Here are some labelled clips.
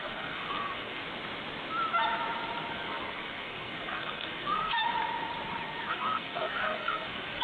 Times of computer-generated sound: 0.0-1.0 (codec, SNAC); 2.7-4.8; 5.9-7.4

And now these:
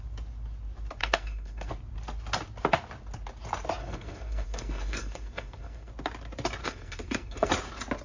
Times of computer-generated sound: 1.0-1.7 (codec, SNAC); 3.8-5.9; 6.6-7.5

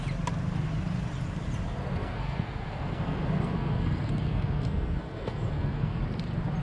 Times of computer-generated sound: 2.0-6.0 (codec, SNAC)

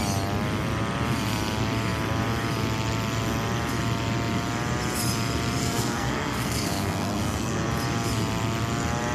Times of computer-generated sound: 5.6-7.7 (codec, SNAC)

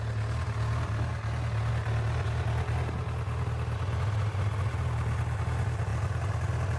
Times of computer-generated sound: none

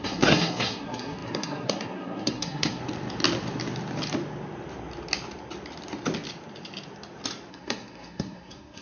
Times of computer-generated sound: 0.0-2.8 (codec, SNAC); 7.5-8.8